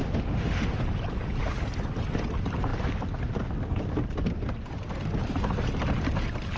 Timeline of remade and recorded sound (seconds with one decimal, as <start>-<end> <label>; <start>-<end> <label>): 0.0-0.8 remade; 0.8-6.6 recorded

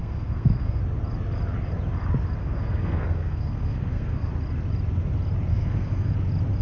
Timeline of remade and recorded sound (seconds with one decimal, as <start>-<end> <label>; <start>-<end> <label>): 0.0-0.8 remade; 0.8-2.4 recorded; 2.4-4.3 remade; 4.3-5.5 recorded; 5.5-6.1 remade; 6.1-6.6 recorded